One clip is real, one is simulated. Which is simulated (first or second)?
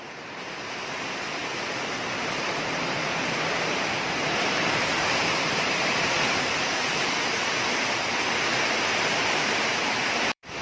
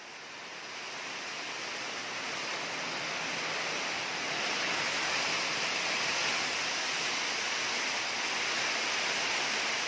first